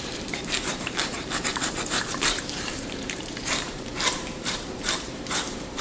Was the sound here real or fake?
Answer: fake